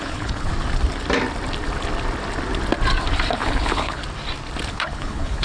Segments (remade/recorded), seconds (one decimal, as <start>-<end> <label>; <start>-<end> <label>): 0.0-0.5 remade; 0.5-3.3 recorded; 3.3-4.0 remade; 4.0-4.7 recorded; 4.7-5.4 remade